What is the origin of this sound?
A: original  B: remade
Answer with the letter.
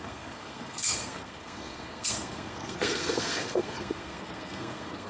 B